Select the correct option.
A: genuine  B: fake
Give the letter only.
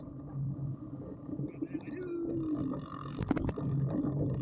A